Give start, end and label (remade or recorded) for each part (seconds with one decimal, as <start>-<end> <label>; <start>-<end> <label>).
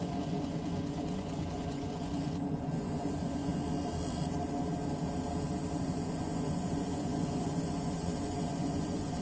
0.0-3.5 remade; 3.5-5.8 recorded; 5.8-9.2 remade